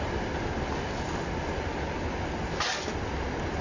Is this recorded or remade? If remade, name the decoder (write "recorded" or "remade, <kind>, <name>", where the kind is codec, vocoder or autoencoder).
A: recorded